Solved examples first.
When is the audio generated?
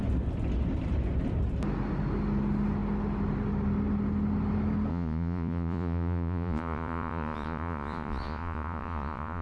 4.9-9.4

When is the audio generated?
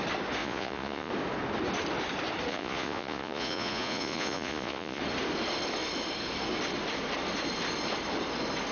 0.4-1.1; 2.5-5.0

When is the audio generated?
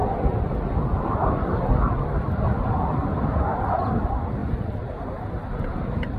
none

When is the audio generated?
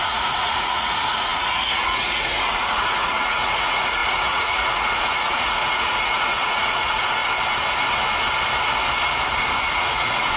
0.0-7.2; 9.7-10.4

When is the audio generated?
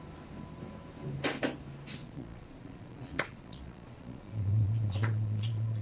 2.0-5.8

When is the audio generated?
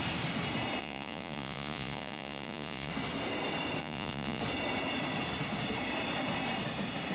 0.8-2.9; 3.8-4.4